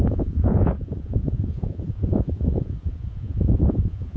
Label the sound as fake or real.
fake